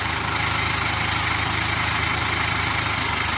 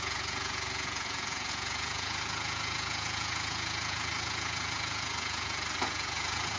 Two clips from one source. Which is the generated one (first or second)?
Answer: second